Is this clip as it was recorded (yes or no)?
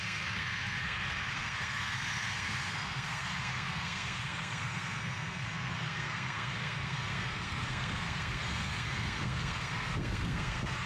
no